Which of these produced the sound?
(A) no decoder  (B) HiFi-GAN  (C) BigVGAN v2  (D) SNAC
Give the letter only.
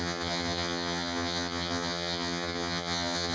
B